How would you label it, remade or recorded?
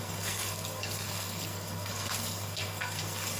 remade